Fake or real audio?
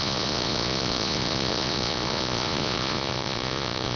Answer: fake